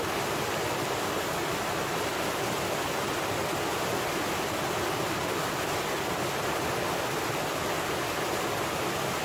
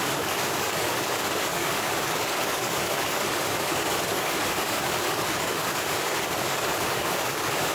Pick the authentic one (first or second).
first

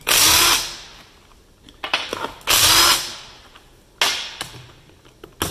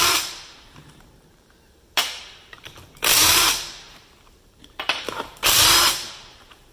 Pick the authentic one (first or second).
first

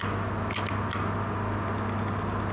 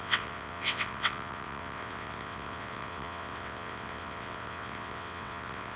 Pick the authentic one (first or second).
first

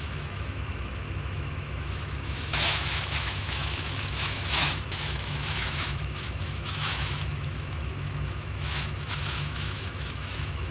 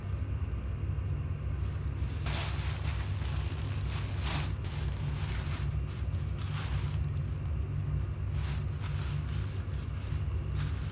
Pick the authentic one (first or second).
second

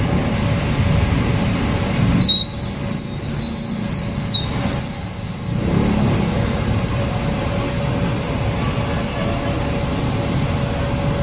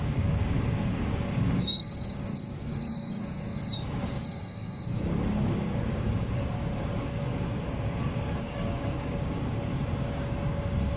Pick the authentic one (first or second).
first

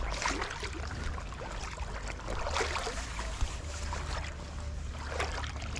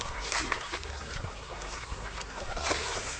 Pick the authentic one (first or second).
first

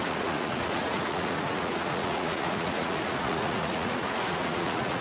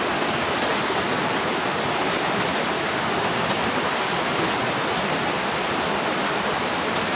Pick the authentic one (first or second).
second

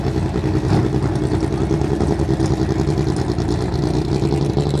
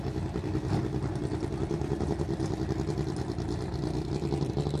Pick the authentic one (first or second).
first